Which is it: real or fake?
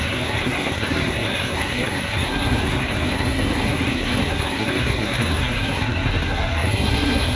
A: fake